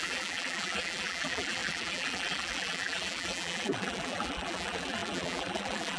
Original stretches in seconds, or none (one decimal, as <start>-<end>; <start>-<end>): none